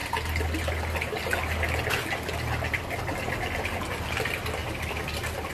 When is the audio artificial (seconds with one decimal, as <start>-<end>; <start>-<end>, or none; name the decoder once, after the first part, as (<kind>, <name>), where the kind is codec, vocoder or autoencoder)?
none